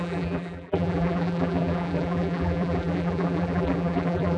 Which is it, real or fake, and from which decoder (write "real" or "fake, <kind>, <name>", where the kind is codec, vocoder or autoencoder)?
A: fake, vocoder, BigVGAN v2